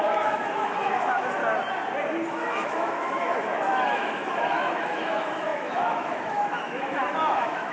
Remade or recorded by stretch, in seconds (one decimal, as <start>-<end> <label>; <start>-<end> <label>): 0.0-1.4 remade; 1.4-2.3 recorded; 2.3-7.7 remade